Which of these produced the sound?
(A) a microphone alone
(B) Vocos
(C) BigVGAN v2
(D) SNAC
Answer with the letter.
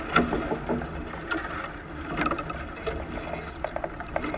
A